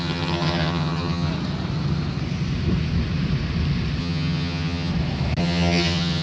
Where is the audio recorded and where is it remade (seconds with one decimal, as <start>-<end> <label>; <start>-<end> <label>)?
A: 0.0-1.3 remade; 1.3-4.0 recorded; 4.0-4.9 remade; 4.9-5.4 recorded; 5.4-6.2 remade